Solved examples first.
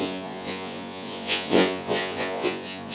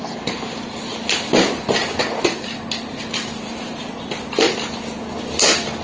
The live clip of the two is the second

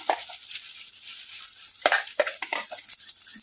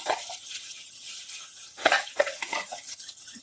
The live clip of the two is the first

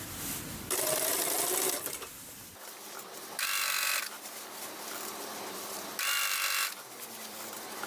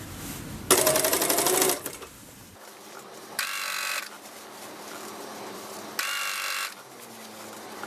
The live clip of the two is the second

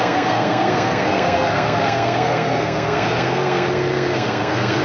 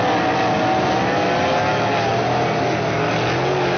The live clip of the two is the second